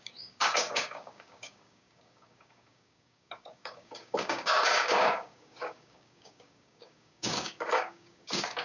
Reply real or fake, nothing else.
fake